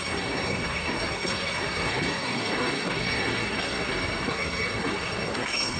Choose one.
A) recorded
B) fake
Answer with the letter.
B